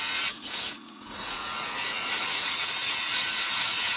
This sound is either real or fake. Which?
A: fake